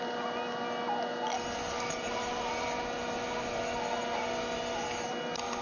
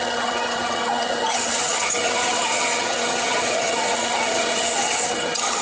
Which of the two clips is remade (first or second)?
second